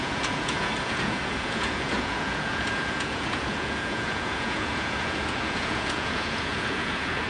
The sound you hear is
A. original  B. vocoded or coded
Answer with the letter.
B